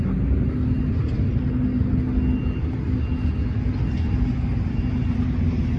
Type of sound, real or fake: real